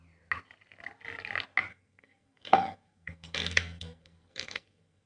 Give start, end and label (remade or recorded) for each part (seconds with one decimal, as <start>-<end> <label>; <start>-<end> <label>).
0.0-1.7 recorded; 1.7-5.1 remade